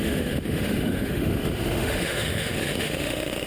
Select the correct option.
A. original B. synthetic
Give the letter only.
B